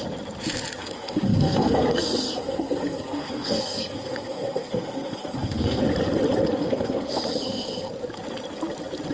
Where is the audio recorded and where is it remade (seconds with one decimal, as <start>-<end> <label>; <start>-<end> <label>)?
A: 0.0-0.8 recorded; 0.8-5.8 remade; 5.8-6.6 recorded; 6.6-7.2 remade; 7.2-9.1 recorded